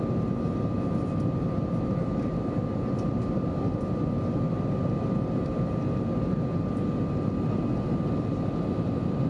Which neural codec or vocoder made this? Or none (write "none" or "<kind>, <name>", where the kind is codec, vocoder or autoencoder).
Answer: none